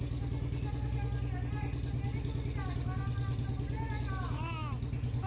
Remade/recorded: recorded